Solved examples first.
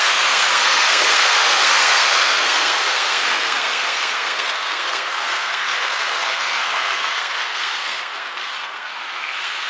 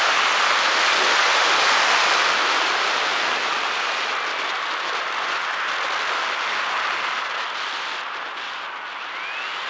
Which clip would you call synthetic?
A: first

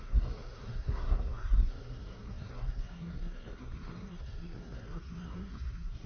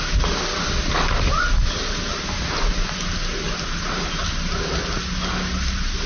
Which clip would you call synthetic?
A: first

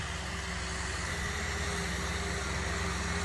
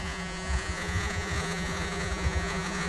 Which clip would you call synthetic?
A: second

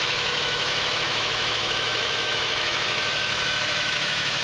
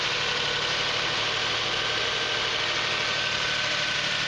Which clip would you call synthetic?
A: first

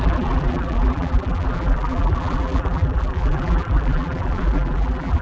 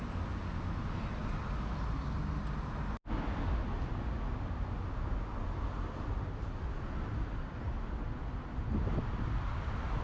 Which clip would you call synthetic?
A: first